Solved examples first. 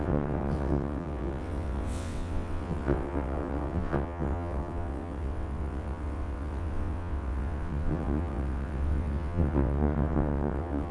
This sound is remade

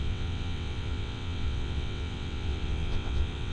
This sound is remade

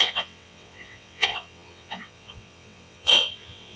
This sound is remade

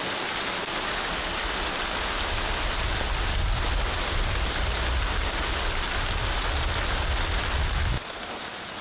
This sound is recorded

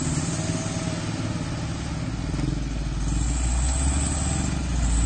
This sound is recorded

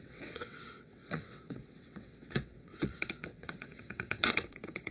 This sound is remade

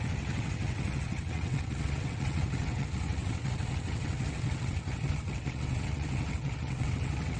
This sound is remade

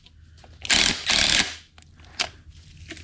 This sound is recorded